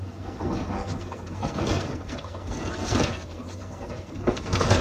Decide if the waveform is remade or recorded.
remade